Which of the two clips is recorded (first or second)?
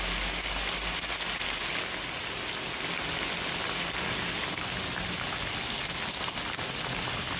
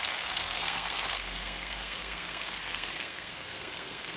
first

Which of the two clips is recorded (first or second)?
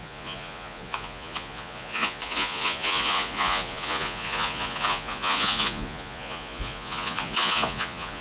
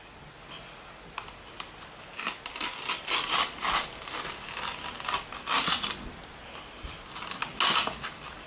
second